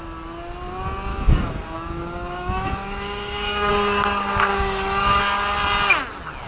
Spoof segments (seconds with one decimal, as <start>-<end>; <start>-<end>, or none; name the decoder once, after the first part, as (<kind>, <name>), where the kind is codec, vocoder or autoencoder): 1.1-3.7 (codec, DAC); 4.5-5.2